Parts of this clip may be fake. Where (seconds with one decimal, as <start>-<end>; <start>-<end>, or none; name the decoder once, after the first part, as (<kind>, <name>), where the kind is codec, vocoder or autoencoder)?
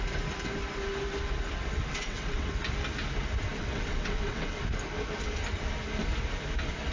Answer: 1.9-2.5 (vocoder, WaveNeXt); 3.6-4.6